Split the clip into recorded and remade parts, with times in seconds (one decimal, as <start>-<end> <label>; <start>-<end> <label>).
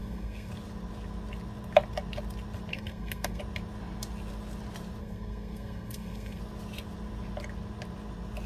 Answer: 0.0-0.5 remade; 0.5-2.7 recorded; 2.7-3.4 remade; 3.4-5.0 recorded; 5.0-6.4 remade; 6.4-8.5 recorded